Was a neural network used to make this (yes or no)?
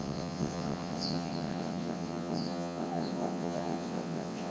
yes